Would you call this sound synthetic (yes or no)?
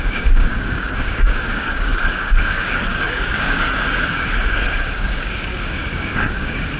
yes